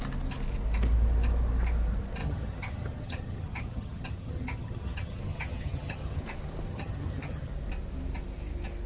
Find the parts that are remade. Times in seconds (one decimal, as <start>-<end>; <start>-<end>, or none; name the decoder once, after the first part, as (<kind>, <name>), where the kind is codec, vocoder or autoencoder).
2.2-6.2 (vocoder, HiFi-GAN); 6.7-7.5